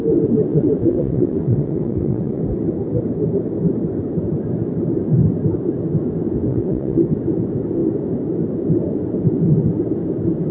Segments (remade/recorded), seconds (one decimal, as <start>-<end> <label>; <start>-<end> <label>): 0.0-0.5 recorded; 0.5-2.4 remade; 2.4-6.5 recorded; 6.5-7.0 remade; 7.0-10.5 recorded